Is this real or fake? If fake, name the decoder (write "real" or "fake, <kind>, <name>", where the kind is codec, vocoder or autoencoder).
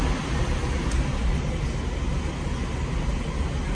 real